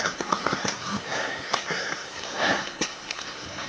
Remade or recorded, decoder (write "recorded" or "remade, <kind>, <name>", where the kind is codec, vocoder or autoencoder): remade, codec, SNAC